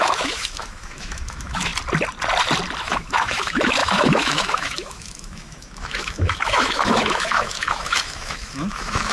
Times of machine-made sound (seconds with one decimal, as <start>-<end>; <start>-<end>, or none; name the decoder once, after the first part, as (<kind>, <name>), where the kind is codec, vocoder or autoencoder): 0.0-1.7 (autoencoder, DAC-VAE); 2.8-9.1